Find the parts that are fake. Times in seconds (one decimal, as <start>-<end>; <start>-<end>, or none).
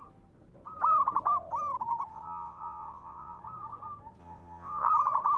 2.1-3.4; 4.2-4.9